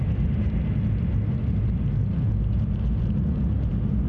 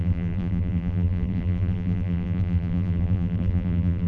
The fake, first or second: second